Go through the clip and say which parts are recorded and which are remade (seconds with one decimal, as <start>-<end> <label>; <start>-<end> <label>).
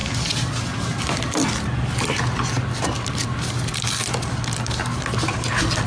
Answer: 0.0-5.9 recorded